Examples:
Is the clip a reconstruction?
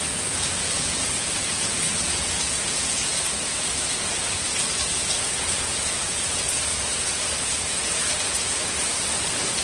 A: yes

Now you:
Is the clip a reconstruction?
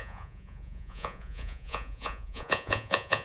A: yes